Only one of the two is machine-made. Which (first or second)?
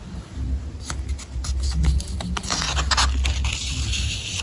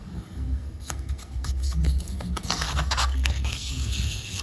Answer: second